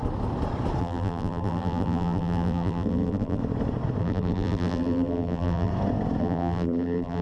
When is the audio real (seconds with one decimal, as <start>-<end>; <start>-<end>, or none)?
0.0-0.8; 3.4-4.0; 5.7-6.2